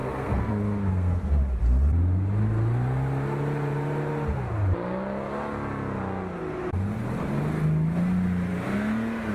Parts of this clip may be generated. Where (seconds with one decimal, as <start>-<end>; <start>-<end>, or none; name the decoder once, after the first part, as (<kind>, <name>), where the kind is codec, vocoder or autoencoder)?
0.0-0.5 (codec, SNAC); 0.9-1.4